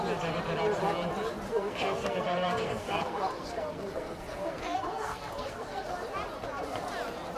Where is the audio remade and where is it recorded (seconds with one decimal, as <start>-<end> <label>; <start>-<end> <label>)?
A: 0.0-1.5 recorded; 1.5-5.9 remade; 5.9-7.4 recorded